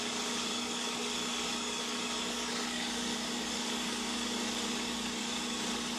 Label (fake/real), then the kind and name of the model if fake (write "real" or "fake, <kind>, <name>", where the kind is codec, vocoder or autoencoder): fake, codec, DAC